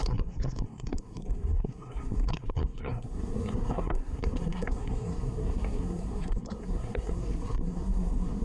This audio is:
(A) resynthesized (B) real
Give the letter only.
A